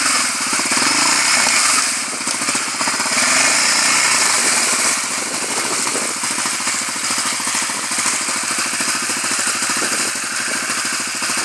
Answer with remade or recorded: recorded